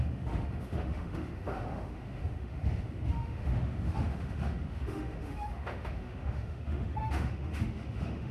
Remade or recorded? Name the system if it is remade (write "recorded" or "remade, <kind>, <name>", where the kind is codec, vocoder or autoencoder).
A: remade, autoencoder, DAC-VAE